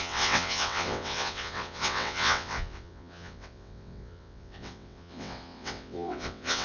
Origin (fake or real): fake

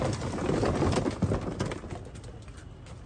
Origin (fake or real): real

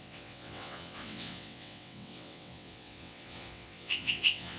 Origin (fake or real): fake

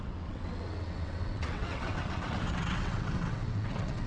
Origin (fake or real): fake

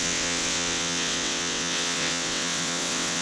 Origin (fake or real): fake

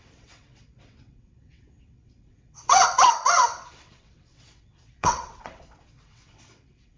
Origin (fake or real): fake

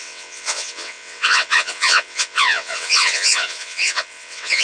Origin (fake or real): fake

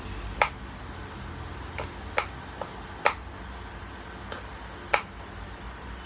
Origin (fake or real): real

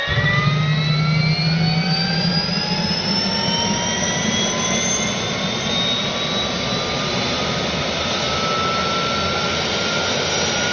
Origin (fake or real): real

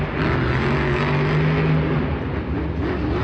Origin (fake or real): real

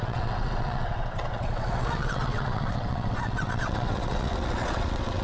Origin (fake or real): fake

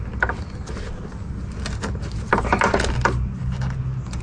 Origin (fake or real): real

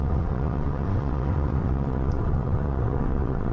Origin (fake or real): fake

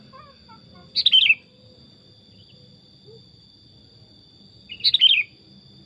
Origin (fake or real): real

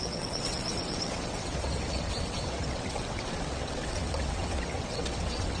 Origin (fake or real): fake